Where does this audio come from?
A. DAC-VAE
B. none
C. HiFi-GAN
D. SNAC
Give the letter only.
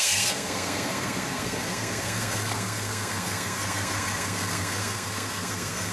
D